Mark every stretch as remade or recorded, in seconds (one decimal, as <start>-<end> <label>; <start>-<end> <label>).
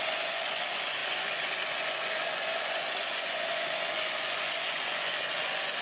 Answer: 0.0-5.8 remade